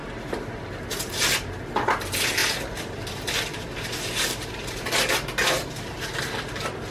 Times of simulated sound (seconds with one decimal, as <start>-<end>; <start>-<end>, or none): 0.0-1.0; 2.4-6.2